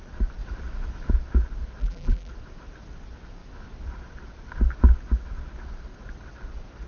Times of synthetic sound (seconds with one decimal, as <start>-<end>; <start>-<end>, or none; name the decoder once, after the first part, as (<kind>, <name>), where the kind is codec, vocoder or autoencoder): 1.8-2.3 (vocoder, BigVGAN v2)